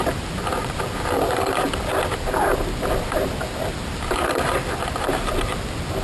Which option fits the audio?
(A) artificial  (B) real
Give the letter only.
B